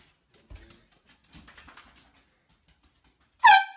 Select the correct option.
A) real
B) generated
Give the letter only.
A